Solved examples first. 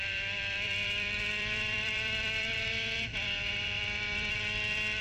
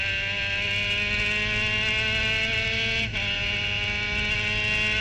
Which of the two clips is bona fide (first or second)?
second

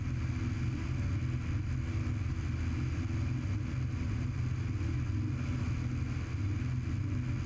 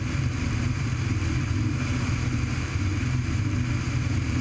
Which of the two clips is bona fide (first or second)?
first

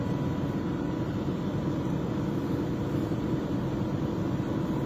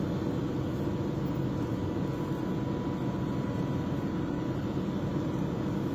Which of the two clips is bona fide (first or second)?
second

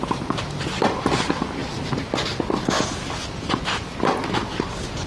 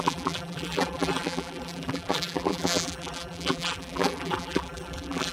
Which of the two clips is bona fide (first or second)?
first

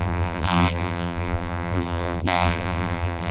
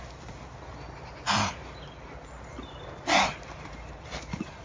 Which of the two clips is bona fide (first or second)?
second